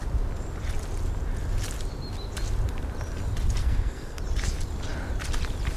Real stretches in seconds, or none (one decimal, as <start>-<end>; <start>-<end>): 0.0-3.6; 4.2-5.8